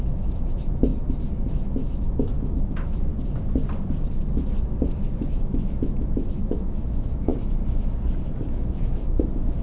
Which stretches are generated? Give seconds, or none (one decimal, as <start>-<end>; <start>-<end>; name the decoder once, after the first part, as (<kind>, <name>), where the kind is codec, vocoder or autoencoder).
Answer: 0.0-0.9 (autoencoder, DAC-VAE); 1.5-3.1; 5.2-7.3; 8.4-9.6